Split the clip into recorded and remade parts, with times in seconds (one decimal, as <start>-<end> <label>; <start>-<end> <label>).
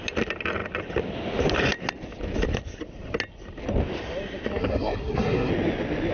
0.0-4.6 recorded; 4.6-5.5 remade; 5.5-6.1 recorded